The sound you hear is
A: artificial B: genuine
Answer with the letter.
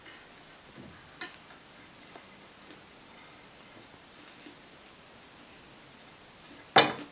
B